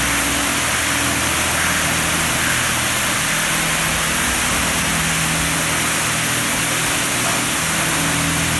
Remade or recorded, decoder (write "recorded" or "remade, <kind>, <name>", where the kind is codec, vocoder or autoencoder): recorded